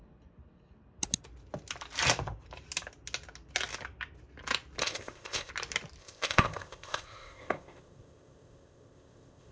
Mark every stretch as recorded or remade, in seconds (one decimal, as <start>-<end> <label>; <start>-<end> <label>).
0.0-4.8 recorded; 4.8-5.5 remade; 5.5-6.0 recorded; 6.0-9.5 remade